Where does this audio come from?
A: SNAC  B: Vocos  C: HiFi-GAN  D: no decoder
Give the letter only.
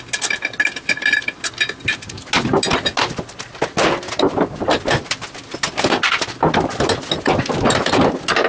D